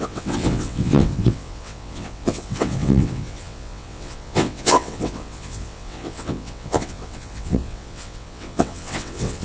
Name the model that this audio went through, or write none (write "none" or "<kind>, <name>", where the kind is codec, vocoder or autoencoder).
vocoder, WaveNeXt